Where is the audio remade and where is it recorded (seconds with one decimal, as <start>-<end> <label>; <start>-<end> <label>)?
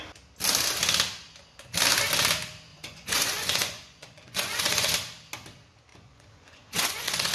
0.0-2.7 recorded; 2.7-4.9 remade; 4.9-5.9 recorded; 5.9-7.3 remade